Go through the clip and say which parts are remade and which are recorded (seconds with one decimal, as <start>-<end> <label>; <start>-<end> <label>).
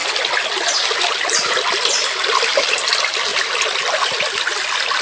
0.0-5.0 recorded